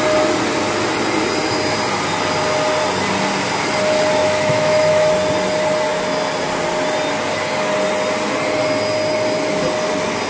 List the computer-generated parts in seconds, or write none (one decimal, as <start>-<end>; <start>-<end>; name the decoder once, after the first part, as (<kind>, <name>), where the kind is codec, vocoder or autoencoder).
4.2-5.1 (autoencoder, DAC-VAE)